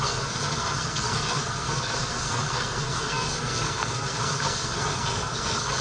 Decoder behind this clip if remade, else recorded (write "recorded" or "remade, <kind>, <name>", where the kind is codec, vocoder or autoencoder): remade, codec, SNAC